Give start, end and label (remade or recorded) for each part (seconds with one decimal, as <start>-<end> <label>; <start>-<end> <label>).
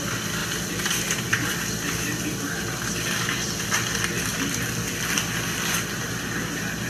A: 0.0-6.9 recorded